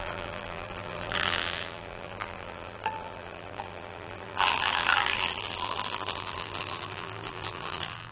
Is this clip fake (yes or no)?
yes